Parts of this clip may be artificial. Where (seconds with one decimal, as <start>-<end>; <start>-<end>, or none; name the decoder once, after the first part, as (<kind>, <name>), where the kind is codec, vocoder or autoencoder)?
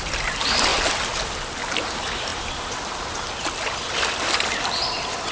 0.0-0.7 (vocoder, BigVGAN v2); 1.7-5.3